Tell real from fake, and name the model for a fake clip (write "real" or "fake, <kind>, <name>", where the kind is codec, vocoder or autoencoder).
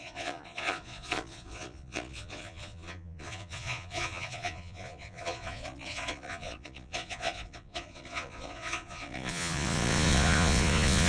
fake, vocoder, Vocos